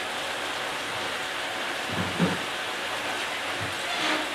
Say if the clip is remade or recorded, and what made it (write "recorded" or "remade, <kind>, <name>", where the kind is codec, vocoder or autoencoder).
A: recorded